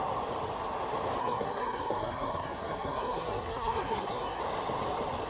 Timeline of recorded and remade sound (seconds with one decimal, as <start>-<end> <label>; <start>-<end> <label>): 0.0-1.2 recorded; 1.2-4.4 remade; 4.4-5.3 recorded